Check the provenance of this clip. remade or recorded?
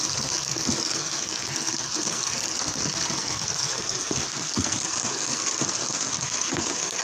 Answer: remade